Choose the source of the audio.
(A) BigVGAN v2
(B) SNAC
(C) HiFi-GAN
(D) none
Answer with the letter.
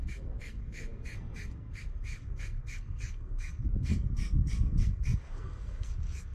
B